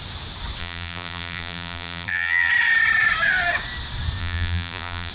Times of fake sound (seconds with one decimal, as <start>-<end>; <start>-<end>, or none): 0.6-2.5; 4.2-5.1